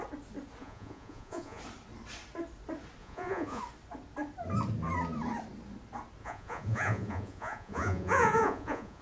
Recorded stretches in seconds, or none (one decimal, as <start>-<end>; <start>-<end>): 0.0-0.6; 1.6-3.0; 3.6-6.2